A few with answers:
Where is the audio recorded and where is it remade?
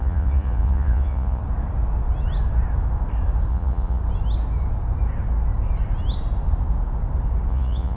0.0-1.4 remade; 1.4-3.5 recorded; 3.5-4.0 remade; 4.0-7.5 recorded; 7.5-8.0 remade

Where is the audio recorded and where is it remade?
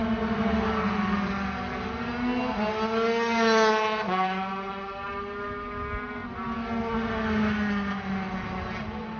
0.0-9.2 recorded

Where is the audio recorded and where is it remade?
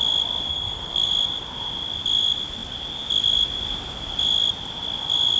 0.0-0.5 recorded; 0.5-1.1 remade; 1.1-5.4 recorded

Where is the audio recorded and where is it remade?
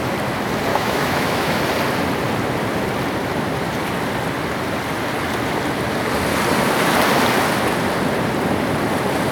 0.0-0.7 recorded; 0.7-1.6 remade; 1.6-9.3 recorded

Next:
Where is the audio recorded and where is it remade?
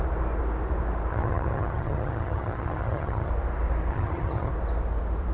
0.0-1.1 recorded; 1.1-3.3 remade; 3.3-3.9 recorded; 3.9-4.5 remade; 4.5-5.3 recorded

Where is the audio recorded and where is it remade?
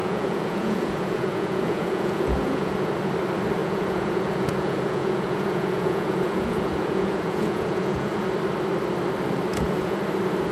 0.0-2.9 remade; 2.9-3.6 recorded; 3.6-8.3 remade; 8.3-9.5 recorded; 9.5-10.0 remade; 10.0-10.5 recorded